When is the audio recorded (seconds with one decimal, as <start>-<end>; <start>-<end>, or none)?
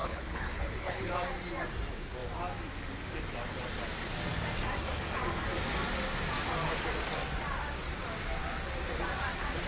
1.1-9.7